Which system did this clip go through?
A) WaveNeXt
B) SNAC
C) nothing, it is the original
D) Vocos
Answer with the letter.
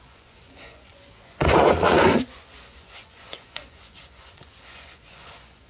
D